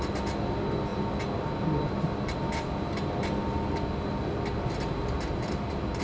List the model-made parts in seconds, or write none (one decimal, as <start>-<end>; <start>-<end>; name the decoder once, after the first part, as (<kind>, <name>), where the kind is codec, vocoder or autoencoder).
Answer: none